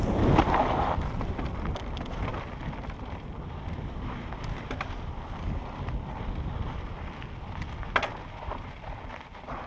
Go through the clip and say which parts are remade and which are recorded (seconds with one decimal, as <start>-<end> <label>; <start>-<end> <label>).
0.0-9.7 recorded

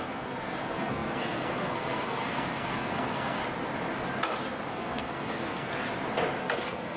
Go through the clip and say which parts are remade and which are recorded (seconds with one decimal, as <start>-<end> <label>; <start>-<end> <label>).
0.0-3.4 remade; 3.4-4.7 recorded; 4.7-5.7 remade; 5.7-6.4 recorded; 6.4-7.0 remade

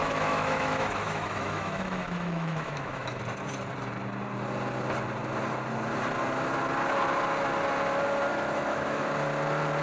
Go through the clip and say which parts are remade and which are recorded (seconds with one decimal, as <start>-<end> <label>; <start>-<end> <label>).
0.0-3.2 remade; 3.2-8.3 recorded; 8.3-9.1 remade; 9.1-9.8 recorded

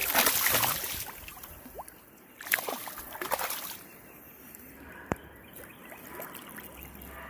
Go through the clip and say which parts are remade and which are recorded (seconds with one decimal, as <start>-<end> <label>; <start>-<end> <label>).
0.0-0.7 remade; 0.7-1.3 recorded; 1.3-5.7 remade; 5.7-7.3 recorded

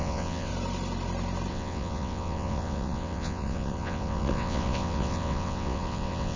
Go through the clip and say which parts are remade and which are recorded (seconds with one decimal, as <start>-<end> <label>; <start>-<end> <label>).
0.0-0.5 remade; 0.5-1.5 recorded; 1.5-6.4 remade